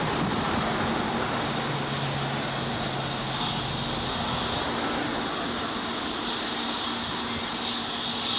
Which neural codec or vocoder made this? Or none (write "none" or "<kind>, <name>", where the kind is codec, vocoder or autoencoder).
none